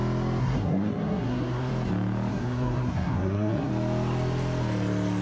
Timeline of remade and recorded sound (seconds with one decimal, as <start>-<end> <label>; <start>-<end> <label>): 0.0-0.4 recorded; 0.4-1.7 remade; 1.7-2.3 recorded; 2.3-3.7 remade; 3.7-5.2 recorded